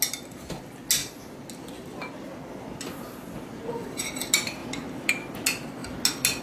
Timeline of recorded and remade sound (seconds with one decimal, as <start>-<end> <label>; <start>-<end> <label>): 0.0-6.4 recorded